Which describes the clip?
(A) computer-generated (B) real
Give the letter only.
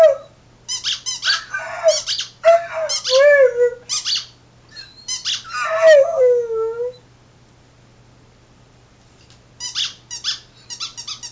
B